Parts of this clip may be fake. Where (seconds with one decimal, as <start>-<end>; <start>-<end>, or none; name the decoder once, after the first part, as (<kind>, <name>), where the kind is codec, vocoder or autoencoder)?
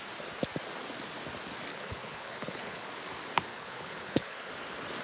1.7-2.9 (codec, HILCodec); 3.5-4.5